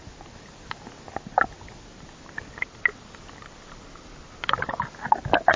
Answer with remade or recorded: recorded